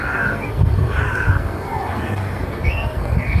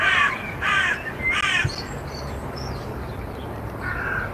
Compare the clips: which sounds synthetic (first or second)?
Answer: first